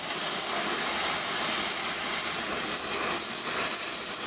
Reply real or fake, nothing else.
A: real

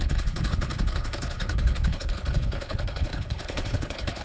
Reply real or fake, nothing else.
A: fake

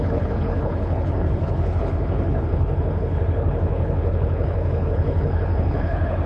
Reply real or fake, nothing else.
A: fake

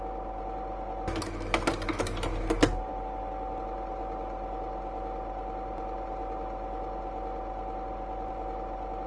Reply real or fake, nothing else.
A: real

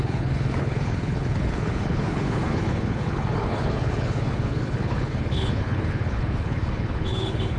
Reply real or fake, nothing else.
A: fake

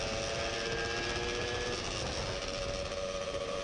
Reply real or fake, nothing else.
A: real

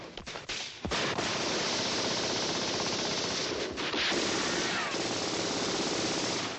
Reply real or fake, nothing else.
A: real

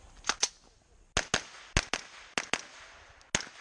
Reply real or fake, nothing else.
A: real